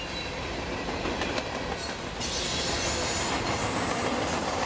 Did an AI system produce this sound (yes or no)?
no